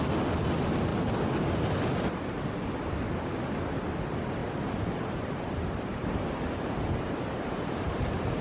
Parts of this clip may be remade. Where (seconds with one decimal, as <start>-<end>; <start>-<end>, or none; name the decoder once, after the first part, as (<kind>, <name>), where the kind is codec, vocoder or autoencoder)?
4.4-8.4 (vocoder, BigVGAN v2)